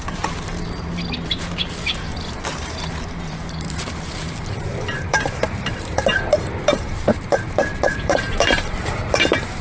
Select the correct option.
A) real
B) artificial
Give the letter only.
B